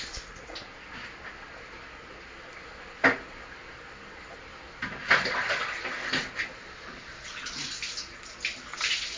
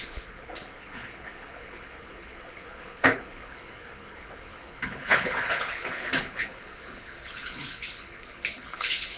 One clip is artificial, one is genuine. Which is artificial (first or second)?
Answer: second